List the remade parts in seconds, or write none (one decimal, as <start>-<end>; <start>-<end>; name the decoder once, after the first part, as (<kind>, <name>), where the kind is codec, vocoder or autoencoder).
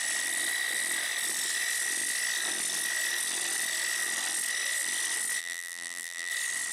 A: 5.4-6.3 (vocoder, BigVGAN v2)